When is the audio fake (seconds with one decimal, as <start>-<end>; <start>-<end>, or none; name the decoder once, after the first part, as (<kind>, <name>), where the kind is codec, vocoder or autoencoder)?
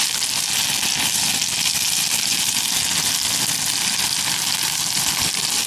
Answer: none